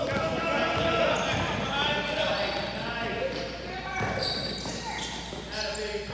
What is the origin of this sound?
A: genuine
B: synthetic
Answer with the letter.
A